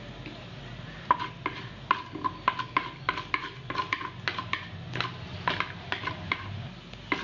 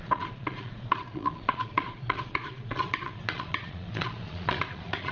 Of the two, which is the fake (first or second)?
second